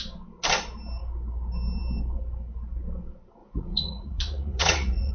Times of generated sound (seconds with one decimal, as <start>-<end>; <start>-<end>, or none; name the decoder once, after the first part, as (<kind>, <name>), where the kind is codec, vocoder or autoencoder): 3.4-5.1 (vocoder, Vocos)